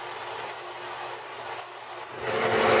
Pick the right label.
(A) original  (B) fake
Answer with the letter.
A